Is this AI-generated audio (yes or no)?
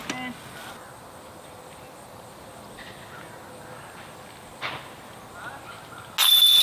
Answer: no